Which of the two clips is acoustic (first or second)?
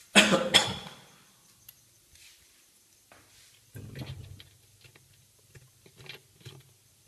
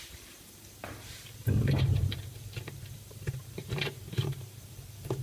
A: first